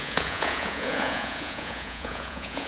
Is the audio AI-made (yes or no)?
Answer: yes